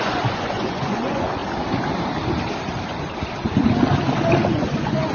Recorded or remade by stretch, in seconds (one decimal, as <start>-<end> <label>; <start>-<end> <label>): 0.0-1.4 remade; 1.4-4.5 recorded; 4.5-5.1 remade